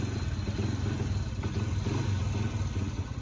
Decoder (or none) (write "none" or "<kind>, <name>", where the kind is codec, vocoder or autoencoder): none